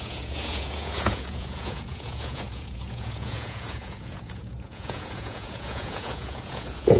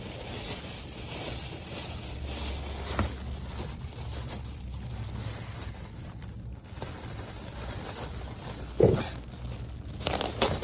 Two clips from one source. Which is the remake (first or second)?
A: first